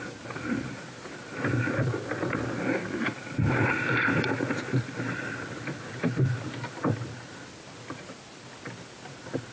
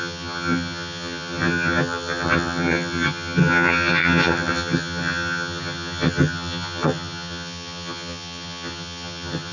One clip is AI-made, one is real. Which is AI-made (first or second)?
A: second